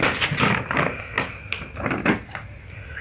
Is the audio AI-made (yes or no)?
no